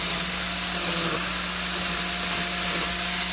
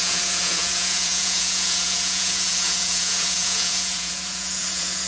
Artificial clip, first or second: second